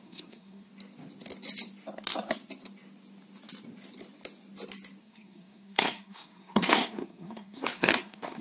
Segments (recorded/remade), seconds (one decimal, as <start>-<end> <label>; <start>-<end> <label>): 0.0-0.7 remade; 0.7-5.0 recorded; 5.0-8.4 remade